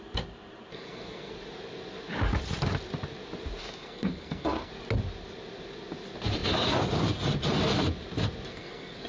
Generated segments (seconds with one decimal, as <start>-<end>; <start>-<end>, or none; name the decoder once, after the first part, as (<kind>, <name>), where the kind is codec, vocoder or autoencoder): 0.7-1.3 (codec, SNAC); 3.6-4.7; 8.5-9.1